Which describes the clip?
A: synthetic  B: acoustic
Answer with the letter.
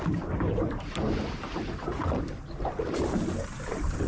B